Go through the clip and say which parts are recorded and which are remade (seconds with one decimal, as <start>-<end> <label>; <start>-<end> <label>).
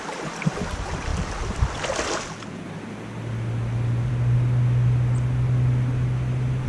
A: 0.0-6.7 recorded